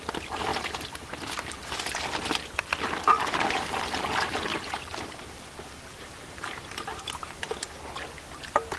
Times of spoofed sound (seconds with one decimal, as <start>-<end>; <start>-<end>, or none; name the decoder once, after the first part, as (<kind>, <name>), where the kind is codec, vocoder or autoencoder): 4.5-7.0 (vocoder, BigVGAN v2)